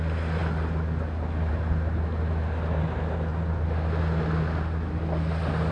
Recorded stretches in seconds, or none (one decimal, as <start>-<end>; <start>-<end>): 0.0-5.7